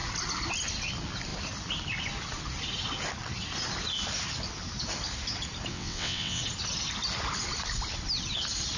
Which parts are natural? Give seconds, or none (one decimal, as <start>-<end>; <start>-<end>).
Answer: 0.0-5.7; 6.4-8.8